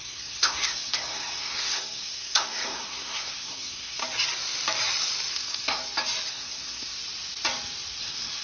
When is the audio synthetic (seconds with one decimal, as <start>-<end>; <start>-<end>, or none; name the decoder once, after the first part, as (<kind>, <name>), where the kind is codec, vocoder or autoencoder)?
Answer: 0.0-4.0 (codec, SNAC); 5.3-5.8; 6.3-6.9; 8.0-8.4